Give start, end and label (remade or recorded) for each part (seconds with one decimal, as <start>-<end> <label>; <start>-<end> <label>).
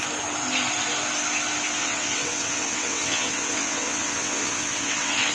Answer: 0.0-1.8 recorded; 1.8-5.3 remade